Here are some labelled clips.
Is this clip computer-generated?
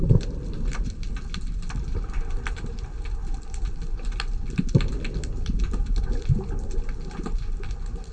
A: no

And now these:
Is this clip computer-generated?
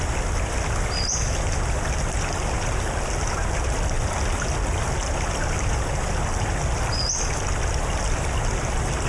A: no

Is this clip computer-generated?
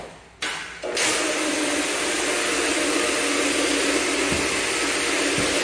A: no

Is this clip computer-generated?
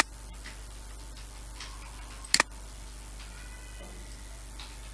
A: no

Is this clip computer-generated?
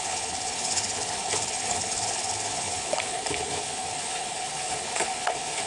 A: yes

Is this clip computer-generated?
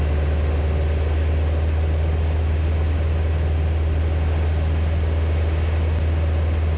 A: no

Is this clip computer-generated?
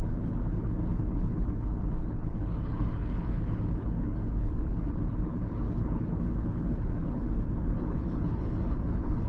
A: yes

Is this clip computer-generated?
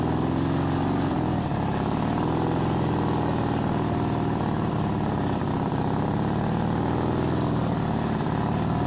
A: no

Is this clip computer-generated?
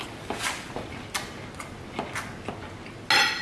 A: no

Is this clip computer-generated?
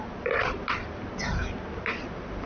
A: no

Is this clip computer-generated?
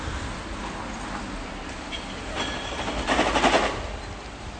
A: no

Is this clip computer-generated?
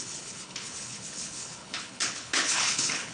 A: yes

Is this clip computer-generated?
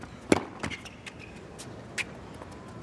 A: no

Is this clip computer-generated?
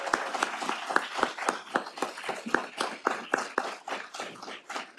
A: no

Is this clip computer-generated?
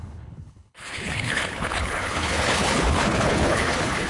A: yes